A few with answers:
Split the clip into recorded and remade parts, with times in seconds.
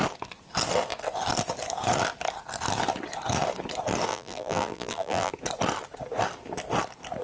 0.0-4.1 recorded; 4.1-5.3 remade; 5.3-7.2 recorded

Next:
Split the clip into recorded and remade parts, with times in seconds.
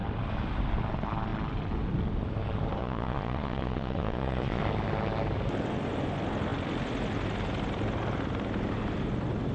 0.0-2.8 recorded; 2.8-4.6 remade; 4.6-9.5 recorded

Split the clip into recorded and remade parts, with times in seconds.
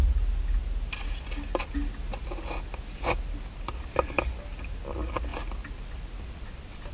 0.0-6.9 recorded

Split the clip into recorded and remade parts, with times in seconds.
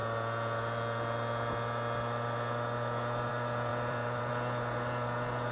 0.0-3.7 recorded; 3.7-4.3 remade; 4.3-5.5 recorded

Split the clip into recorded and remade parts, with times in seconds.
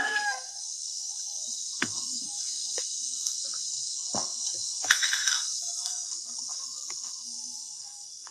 0.0-8.3 remade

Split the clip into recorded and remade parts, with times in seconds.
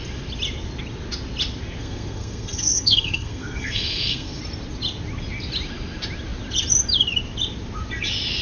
0.0-1.8 recorded; 1.8-4.4 remade; 4.4-8.4 recorded